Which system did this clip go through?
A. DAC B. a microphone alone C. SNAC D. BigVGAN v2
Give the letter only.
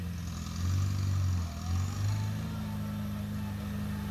B